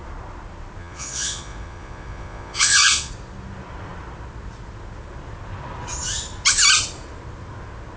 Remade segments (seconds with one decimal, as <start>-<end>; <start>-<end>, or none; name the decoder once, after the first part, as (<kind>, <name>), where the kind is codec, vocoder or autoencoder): 0.8-3.1 (vocoder, Vocos)